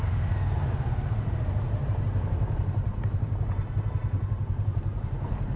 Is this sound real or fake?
fake